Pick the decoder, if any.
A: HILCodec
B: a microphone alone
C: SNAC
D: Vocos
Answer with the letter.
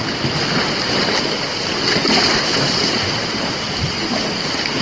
B